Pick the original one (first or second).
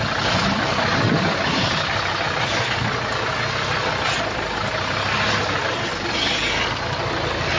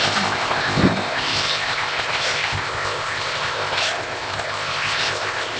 first